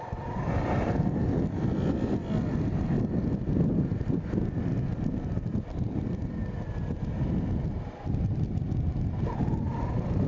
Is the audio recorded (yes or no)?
yes